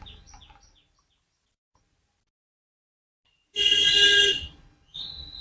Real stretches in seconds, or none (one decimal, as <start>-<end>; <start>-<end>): 0.0-5.4